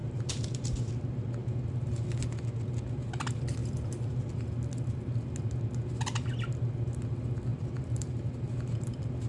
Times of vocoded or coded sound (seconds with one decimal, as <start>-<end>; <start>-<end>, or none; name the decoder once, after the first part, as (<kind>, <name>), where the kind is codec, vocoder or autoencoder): 0.0-0.9 (vocoder, BigVGAN v2); 1.4-1.9; 3.6-4.2; 7.5-8.3